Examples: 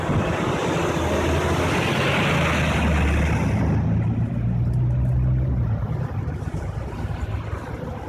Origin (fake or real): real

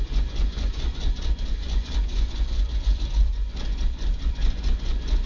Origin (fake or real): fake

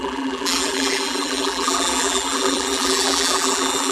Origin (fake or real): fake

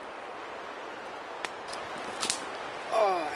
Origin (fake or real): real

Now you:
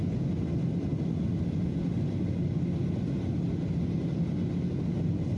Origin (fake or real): real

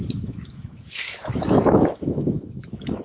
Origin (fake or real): fake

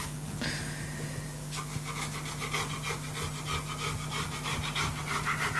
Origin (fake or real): real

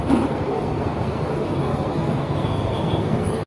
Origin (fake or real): fake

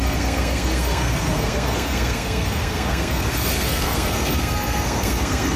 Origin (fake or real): fake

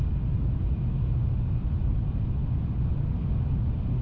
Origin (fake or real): real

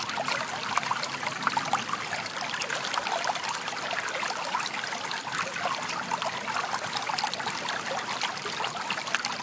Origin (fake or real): real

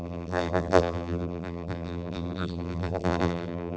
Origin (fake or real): fake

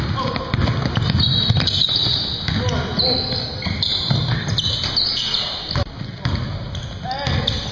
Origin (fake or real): real